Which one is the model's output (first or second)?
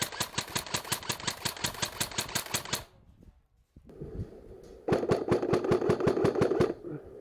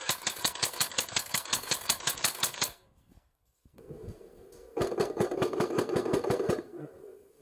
second